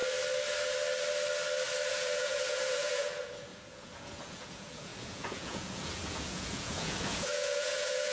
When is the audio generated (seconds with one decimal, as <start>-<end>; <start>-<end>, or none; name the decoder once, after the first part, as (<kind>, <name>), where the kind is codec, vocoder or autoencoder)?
1.9-8.1 (vocoder, Vocos)